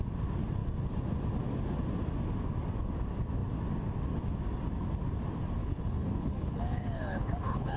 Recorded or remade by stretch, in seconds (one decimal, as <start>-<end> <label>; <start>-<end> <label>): 0.0-5.6 recorded; 5.6-7.8 remade